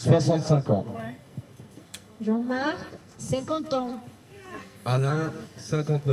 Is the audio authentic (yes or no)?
no